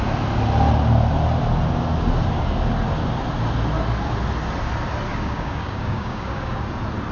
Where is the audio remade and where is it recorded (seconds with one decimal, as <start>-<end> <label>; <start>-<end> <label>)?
0.0-5.1 recorded; 5.1-6.6 remade; 6.6-7.1 recorded